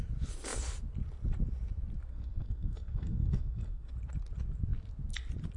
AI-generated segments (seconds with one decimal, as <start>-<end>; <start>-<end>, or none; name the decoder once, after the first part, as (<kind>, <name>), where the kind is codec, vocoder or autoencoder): 2.1-3.9 (codec, SNAC)